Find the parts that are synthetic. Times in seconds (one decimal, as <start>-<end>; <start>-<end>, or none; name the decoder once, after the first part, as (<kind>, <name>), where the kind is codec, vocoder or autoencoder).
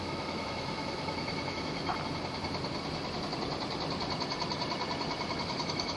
0.0-1.8 (autoencoder, DAC-VAE); 5.4-6.0